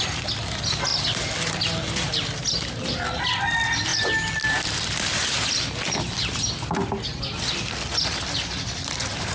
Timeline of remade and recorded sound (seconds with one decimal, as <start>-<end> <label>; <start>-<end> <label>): 0.0-9.3 recorded